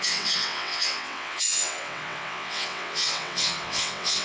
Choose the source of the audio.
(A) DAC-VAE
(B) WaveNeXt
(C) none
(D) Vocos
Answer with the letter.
B